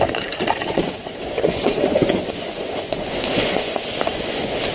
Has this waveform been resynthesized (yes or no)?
yes